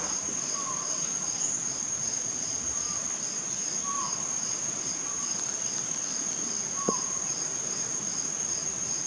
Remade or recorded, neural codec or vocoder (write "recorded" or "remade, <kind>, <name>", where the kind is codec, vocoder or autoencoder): recorded